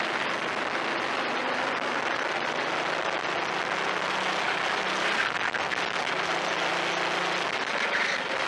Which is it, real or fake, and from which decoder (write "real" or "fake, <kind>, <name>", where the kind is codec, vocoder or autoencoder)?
real